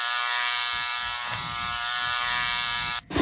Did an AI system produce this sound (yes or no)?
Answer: no